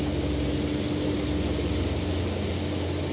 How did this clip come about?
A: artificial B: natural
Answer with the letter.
B